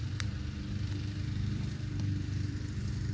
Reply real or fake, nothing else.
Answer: fake